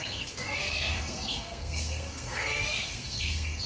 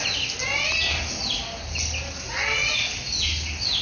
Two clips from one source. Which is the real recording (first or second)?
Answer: second